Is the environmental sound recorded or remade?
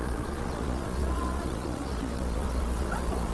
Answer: remade